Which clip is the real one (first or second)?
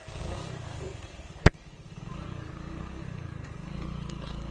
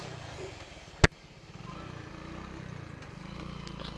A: second